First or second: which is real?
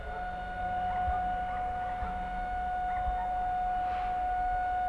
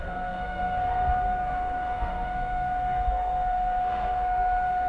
first